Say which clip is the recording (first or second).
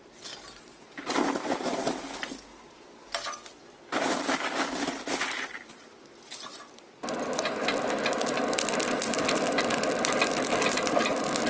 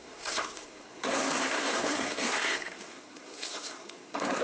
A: first